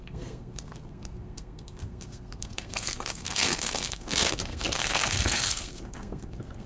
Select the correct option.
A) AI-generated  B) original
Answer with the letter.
A